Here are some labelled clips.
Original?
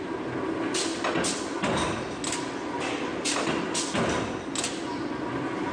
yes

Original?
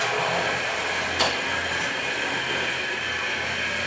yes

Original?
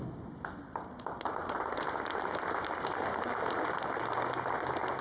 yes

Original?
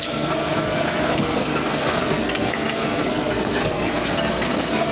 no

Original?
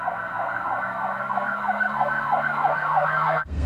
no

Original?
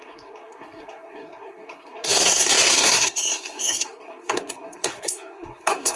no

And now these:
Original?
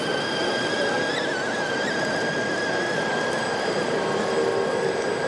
yes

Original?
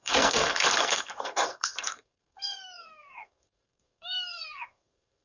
no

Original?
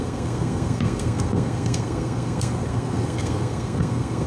no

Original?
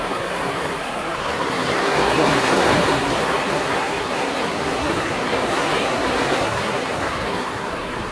no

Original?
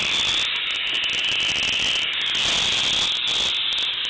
yes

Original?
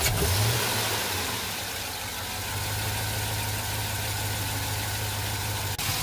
yes